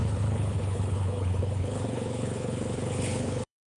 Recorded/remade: remade